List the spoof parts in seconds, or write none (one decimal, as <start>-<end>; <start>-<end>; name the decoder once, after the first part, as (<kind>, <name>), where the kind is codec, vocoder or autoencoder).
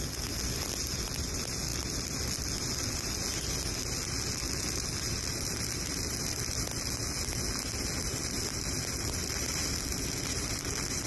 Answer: none